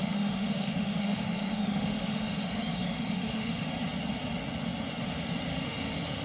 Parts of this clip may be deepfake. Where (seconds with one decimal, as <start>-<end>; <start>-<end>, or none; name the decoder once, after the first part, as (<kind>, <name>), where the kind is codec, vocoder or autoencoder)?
0.0-3.7 (autoencoder, DAC-VAE); 5.5-6.2